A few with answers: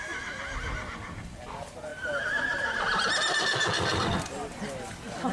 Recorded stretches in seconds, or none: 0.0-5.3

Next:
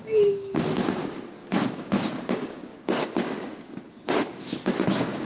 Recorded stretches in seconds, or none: none

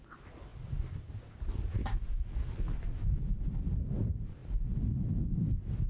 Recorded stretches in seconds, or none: 0.0-5.9

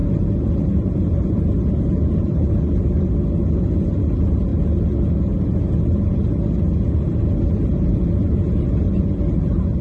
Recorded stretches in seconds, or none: 0.0-9.8

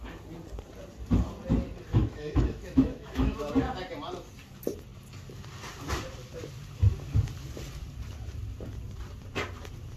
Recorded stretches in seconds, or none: 0.0-1.9; 3.5-10.0

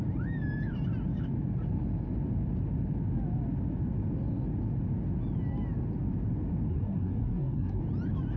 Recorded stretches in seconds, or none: 0.0-6.7; 7.8-8.4

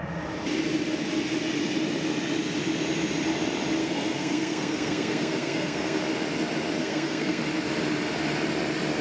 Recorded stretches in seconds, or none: 0.0-3.8; 6.0-6.8; 7.4-9.0

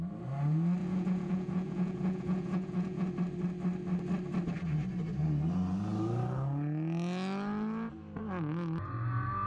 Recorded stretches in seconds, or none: 0.0-0.8; 3.1-9.5